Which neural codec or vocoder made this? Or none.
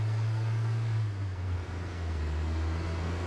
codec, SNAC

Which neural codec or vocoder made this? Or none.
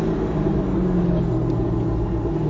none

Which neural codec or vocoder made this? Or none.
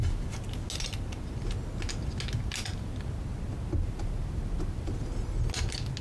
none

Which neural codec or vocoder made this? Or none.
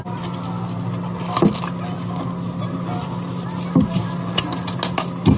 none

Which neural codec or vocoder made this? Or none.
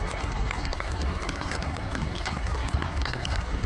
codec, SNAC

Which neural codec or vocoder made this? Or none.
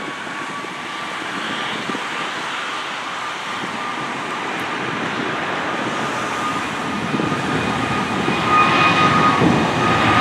none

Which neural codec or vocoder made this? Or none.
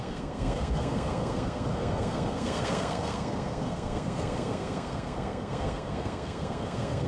codec, SNAC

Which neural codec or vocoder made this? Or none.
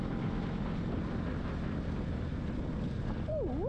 none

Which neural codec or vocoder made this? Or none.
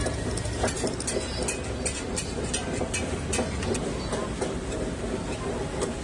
none